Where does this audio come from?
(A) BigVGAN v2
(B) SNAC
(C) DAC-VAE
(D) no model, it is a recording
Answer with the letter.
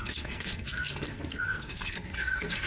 B